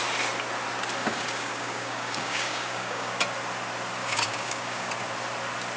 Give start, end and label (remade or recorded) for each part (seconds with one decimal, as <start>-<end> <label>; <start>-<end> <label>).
0.0-1.0 recorded; 1.0-3.1 remade; 3.1-4.0 recorded; 4.0-4.9 remade; 4.9-5.8 recorded